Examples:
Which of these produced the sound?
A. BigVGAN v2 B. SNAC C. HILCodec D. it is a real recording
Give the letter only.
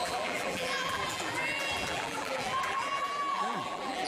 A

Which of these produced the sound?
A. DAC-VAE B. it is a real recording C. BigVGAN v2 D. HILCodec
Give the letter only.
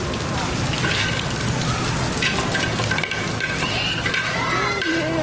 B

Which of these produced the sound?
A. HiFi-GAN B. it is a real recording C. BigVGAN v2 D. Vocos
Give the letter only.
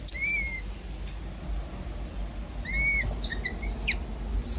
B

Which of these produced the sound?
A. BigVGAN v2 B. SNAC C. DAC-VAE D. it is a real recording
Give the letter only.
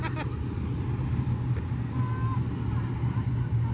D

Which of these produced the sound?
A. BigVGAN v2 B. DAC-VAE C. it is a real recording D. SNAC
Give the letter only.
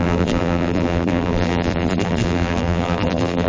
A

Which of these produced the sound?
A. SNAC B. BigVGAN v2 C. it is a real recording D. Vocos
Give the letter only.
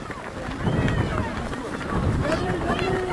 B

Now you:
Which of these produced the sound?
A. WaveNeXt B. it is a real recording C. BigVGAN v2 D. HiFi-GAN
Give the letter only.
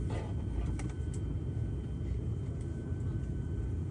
C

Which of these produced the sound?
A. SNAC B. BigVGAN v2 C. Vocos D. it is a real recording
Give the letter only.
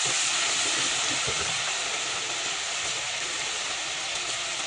D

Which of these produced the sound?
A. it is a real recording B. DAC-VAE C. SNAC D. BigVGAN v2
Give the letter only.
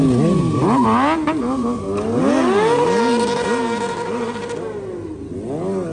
A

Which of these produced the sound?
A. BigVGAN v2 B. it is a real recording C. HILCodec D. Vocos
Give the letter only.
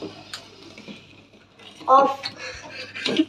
B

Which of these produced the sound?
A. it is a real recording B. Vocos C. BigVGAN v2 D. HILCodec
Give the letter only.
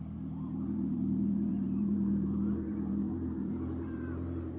C